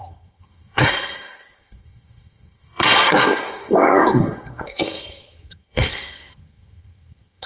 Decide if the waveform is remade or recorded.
remade